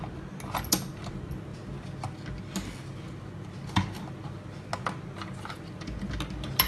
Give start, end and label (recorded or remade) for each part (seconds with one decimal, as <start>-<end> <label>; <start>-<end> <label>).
0.0-6.7 recorded